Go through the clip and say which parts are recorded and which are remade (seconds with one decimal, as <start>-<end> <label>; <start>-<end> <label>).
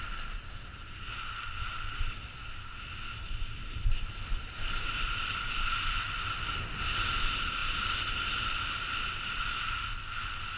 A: 0.0-10.6 recorded